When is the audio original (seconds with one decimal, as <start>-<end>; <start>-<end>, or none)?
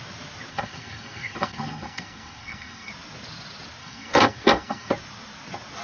0.0-0.5; 2.9-3.8; 4.9-5.8